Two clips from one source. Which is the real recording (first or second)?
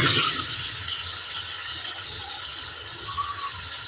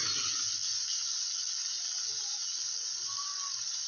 second